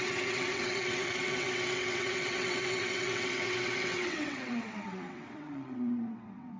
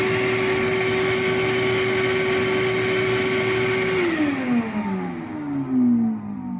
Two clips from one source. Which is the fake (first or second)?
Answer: first